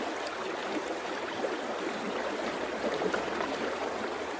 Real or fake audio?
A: real